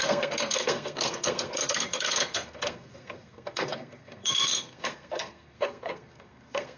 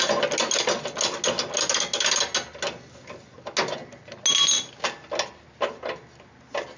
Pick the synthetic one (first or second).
first